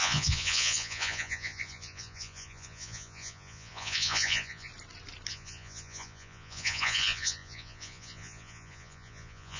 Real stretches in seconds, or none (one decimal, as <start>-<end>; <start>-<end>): 4.7-5.3